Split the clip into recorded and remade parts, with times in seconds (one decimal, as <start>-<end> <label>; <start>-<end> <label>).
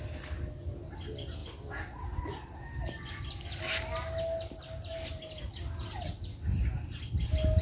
0.0-7.6 recorded